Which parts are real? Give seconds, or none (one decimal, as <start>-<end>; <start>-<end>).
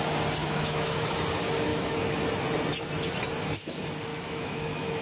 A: 0.0-0.4; 1.1-1.7; 2.2-4.1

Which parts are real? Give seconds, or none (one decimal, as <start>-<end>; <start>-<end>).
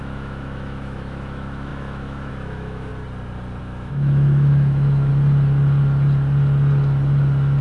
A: 2.9-3.6; 5.1-7.6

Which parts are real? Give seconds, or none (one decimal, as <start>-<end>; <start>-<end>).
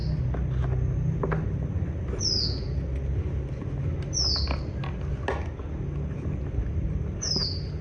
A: 0.0-7.8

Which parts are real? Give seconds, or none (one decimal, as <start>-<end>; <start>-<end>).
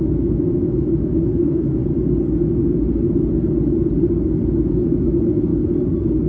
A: 1.8-4.5; 5.5-6.3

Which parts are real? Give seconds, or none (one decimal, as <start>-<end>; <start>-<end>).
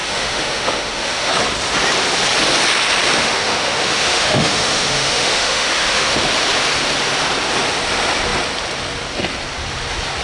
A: 1.3-3.2; 6.2-10.2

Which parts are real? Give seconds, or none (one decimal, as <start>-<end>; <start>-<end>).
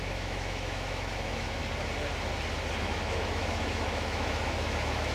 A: 1.6-2.8